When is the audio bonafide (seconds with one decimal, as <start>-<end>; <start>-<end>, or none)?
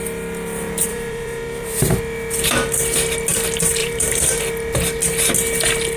0.0-0.9; 2.0-3.8; 4.4-6.0